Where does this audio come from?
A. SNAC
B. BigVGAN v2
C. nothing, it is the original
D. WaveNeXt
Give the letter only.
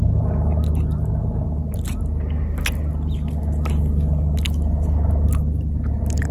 C